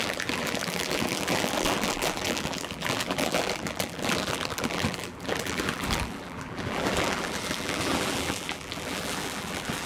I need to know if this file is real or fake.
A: fake